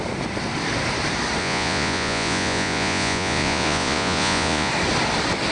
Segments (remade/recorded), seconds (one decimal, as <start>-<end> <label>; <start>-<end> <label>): 0.0-1.4 recorded; 1.4-4.7 remade; 4.7-5.5 recorded